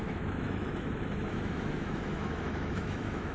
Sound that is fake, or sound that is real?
fake